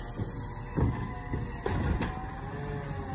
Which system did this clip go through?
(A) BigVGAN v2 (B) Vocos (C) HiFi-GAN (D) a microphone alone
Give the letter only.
D